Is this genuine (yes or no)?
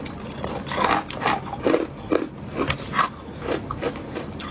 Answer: yes